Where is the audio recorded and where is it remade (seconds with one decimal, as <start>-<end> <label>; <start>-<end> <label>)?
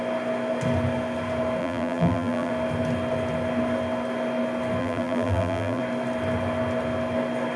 0.0-1.6 recorded; 1.6-2.5 remade; 2.5-4.8 recorded; 4.8-5.8 remade; 5.8-7.6 recorded